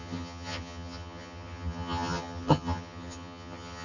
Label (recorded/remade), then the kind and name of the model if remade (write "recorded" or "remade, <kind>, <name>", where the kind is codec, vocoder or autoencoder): remade, vocoder, HiFi-GAN